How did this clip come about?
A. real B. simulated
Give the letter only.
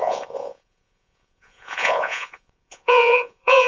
B